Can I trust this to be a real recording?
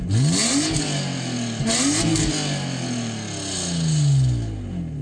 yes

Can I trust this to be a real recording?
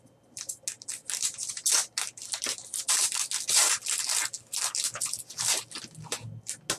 yes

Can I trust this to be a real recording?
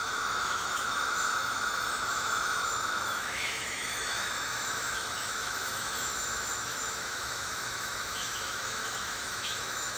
no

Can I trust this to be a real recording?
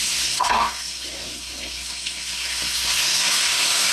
no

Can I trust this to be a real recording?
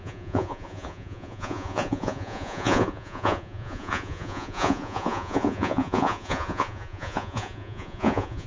no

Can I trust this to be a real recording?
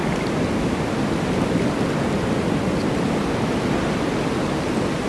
yes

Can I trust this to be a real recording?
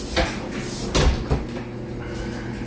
yes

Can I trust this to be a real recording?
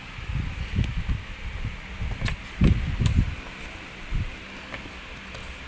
yes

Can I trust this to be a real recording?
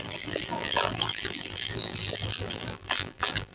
no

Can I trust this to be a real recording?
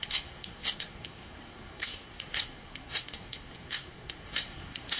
no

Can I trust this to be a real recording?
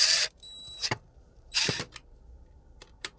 no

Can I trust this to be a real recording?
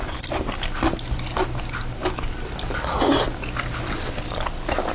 yes